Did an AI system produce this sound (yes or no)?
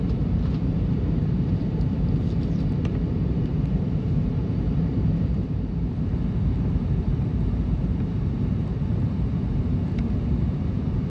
yes